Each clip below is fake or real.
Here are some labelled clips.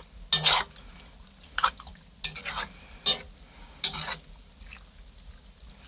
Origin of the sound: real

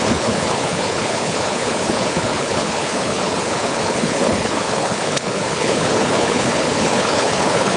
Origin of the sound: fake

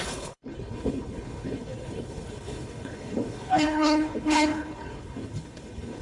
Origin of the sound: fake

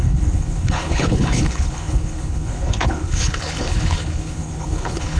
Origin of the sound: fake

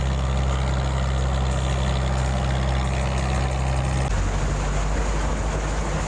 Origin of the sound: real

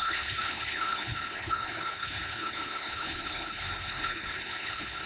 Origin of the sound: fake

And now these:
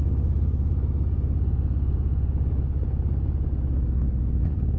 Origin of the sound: real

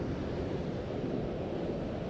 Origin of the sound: real